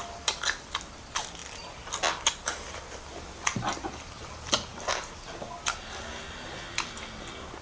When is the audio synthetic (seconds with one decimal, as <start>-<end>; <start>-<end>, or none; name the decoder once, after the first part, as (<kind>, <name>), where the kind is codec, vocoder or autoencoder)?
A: none